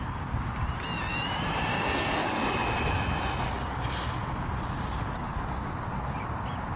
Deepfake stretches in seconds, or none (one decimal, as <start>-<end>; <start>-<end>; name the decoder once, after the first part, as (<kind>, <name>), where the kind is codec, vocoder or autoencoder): 1.1-1.8 (vocoder, BigVGAN v2)